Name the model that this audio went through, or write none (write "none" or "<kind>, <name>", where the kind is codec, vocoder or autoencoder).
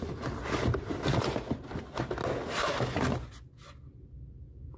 none